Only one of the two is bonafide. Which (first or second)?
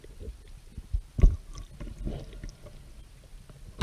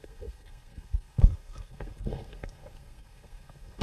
first